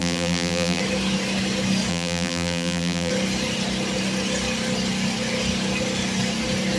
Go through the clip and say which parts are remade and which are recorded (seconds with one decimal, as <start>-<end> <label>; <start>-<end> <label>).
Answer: 0.0-0.8 remade; 0.8-1.9 recorded; 1.9-3.1 remade; 3.1-6.8 recorded